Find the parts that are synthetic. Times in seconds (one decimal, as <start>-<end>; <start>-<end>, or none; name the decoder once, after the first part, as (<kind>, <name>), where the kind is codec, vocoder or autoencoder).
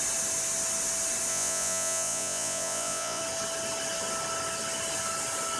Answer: 1.3-3.2 (vocoder, Vocos)